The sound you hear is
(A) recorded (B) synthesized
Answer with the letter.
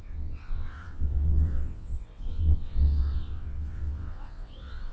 B